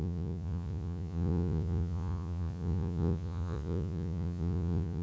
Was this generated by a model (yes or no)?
yes